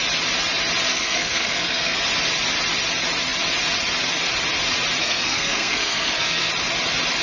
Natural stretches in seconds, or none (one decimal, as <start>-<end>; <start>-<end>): 0.0-0.9; 2.0-5.0; 6.5-7.2